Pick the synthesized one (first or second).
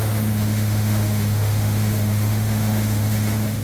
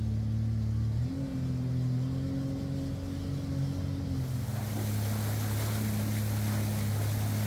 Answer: first